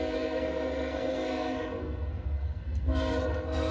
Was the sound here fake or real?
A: fake